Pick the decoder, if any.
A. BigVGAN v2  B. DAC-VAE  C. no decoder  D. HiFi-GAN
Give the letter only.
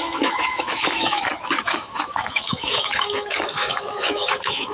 B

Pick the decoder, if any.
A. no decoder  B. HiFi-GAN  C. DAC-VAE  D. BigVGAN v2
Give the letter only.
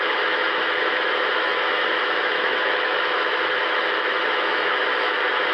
C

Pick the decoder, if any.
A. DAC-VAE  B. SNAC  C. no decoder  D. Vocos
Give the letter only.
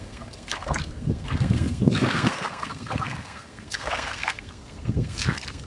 B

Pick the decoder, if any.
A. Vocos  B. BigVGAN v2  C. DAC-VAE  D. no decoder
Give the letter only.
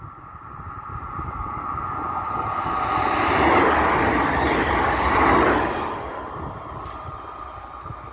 D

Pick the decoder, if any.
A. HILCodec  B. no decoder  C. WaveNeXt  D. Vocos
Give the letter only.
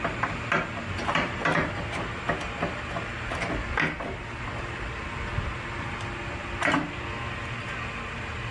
B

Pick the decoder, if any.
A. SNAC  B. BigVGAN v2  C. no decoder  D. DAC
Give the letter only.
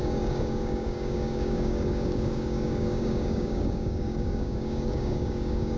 D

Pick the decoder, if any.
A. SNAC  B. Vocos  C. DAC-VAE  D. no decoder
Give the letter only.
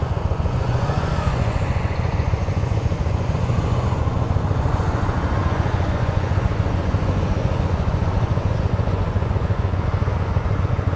B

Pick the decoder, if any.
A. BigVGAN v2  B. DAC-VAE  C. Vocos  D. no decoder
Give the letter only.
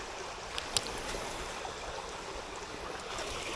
D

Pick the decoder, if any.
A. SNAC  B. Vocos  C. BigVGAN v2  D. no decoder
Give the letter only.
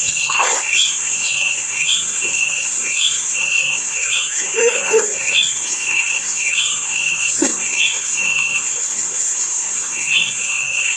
A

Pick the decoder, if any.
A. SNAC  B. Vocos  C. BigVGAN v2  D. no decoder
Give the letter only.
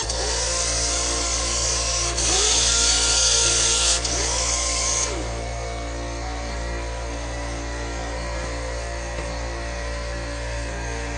A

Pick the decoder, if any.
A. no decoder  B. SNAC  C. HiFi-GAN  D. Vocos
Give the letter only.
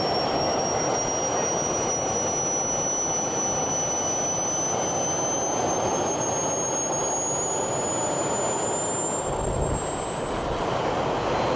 A